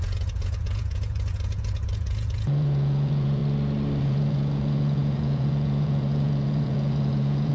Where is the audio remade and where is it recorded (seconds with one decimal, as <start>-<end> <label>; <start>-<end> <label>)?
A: 0.0-3.4 remade; 3.4-4.0 recorded; 4.0-7.5 remade